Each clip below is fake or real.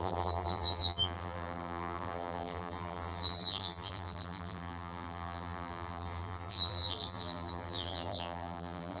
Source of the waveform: fake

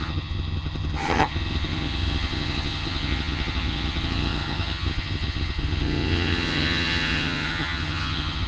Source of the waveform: fake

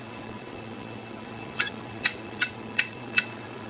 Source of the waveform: fake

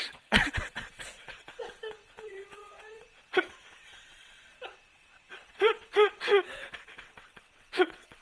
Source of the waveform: fake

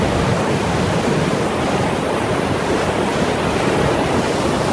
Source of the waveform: real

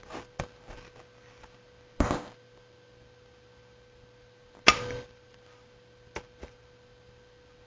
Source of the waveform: real